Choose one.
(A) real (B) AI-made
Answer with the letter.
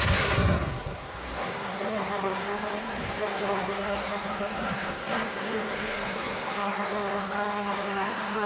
B